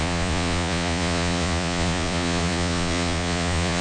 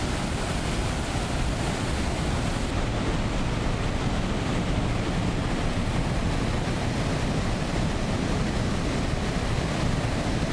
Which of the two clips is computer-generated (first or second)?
first